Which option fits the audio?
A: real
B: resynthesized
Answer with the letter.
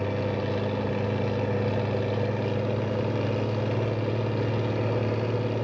A